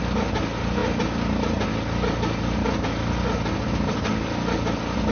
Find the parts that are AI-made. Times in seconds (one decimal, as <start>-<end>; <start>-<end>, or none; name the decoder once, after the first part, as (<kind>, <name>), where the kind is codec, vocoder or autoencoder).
none